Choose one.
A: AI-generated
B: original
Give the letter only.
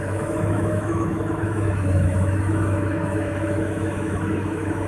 A